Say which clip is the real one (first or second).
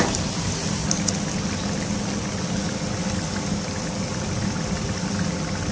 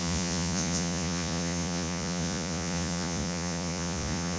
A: first